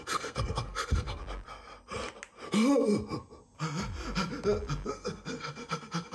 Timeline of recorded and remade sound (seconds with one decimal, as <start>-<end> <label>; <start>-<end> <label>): 0.0-1.2 remade; 1.2-4.9 recorded; 4.9-6.1 remade